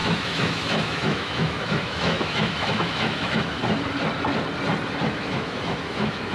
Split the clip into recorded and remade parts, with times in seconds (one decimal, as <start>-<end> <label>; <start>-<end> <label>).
0.0-3.6 remade; 3.6-5.1 recorded; 5.1-6.3 remade

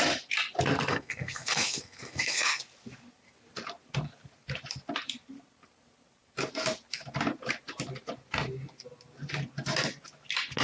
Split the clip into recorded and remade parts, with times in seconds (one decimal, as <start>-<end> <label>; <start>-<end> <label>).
0.0-0.9 recorded; 0.9-2.6 remade; 2.6-10.6 recorded

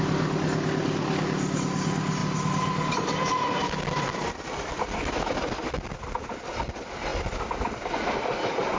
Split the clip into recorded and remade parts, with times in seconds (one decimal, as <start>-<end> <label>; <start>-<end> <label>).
0.0-8.8 recorded

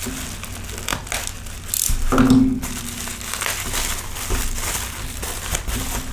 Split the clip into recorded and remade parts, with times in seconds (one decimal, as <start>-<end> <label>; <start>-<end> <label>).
0.0-6.1 recorded